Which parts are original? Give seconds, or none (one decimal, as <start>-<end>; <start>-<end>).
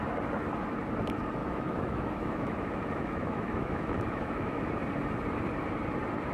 0.0-1.4; 4.7-6.3